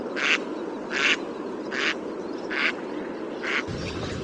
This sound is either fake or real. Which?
real